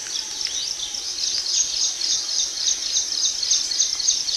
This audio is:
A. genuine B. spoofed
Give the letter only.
A